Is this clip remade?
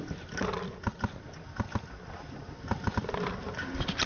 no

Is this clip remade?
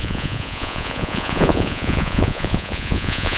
yes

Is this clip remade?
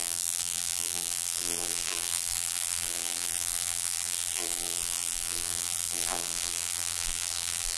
yes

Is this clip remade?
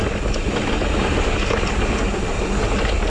no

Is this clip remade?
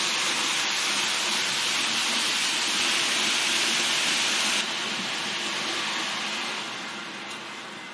no